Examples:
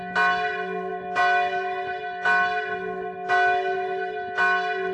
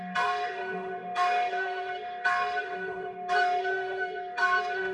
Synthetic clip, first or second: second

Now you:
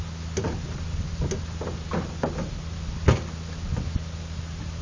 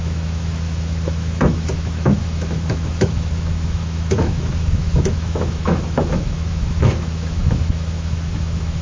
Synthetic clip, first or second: second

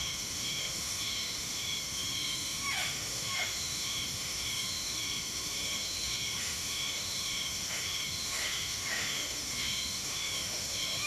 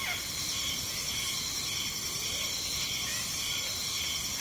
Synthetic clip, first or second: first